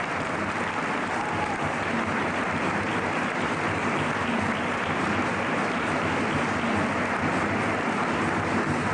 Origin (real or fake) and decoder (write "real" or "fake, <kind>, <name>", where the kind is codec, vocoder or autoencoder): real